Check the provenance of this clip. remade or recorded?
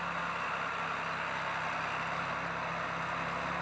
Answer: recorded